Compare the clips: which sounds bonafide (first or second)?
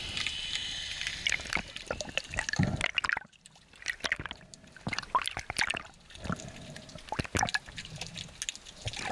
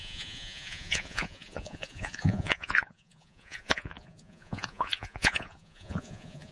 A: first